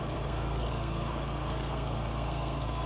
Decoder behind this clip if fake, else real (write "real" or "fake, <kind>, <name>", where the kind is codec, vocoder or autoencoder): fake, codec, SNAC